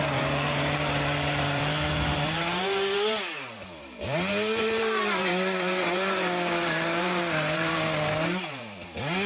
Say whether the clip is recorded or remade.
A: remade